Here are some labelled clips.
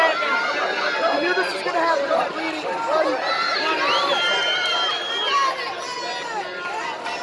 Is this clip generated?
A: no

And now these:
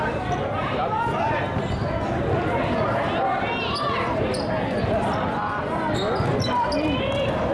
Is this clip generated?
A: no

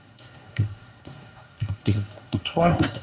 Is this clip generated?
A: yes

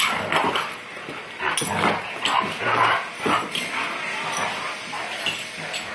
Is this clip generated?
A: no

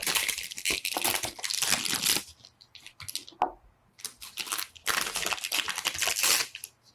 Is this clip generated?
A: no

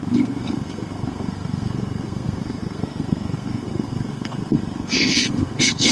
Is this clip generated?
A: yes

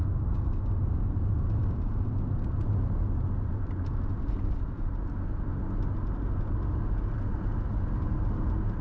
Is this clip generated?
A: no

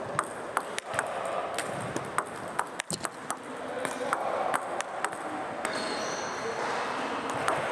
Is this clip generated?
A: no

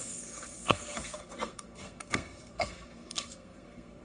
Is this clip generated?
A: yes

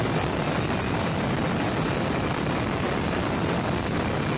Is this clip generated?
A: no